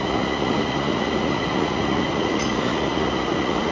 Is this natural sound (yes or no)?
no